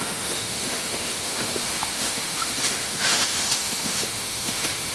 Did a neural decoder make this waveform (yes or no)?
yes